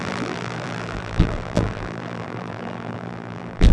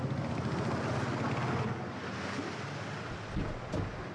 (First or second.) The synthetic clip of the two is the first